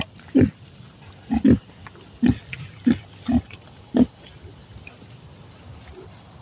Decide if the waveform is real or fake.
real